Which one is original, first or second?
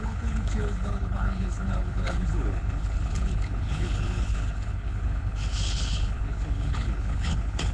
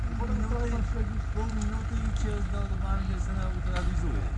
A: second